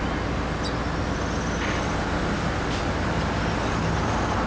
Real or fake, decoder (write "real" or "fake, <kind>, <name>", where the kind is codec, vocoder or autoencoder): real